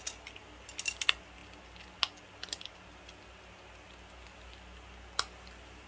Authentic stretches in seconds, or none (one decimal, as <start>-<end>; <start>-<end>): 0.0-5.9